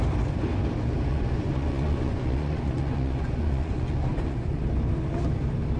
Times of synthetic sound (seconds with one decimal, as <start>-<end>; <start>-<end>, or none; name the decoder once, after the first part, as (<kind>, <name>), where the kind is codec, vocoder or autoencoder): 1.1-4.6 (vocoder, Vocos)